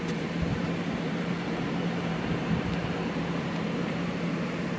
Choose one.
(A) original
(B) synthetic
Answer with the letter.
B